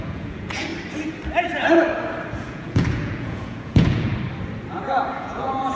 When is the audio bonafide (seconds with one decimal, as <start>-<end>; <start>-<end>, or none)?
0.7-2.4; 4.1-5.1